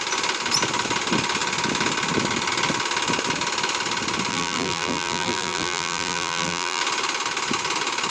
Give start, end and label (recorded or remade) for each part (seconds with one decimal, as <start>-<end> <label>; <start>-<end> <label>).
0.0-4.3 recorded; 4.3-6.8 remade; 6.8-8.1 recorded